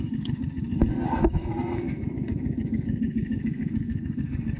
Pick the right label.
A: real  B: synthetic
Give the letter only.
B